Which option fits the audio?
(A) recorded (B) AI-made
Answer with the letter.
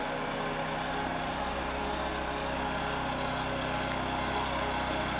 A